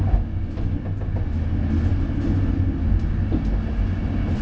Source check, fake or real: real